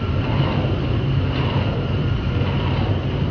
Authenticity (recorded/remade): recorded